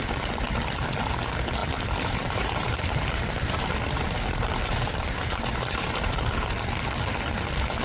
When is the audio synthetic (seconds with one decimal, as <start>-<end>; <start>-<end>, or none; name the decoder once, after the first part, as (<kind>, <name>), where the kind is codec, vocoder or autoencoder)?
1.6-6.3 (vocoder, BigVGAN v2)